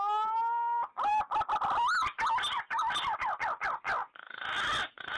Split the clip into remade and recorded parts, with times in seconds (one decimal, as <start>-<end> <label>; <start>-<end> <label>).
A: 0.0-5.2 recorded